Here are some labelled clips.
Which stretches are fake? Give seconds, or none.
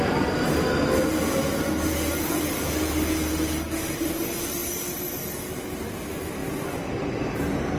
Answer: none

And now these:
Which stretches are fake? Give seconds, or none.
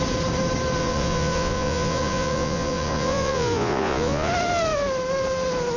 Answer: 0.8-4.3 (vocoder, Vocos)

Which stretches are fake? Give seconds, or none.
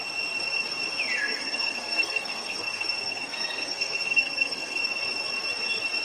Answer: 1.2-4.8 (codec, SNAC)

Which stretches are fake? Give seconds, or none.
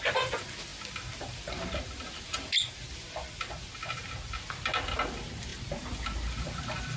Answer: none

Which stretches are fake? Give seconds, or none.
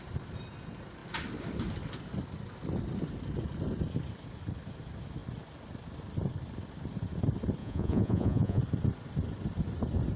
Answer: 7.6-8.6 (vocoder, Vocos)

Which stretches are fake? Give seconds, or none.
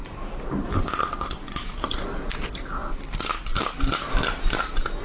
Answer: 0.0-1.0 (vocoder, BigVGAN v2)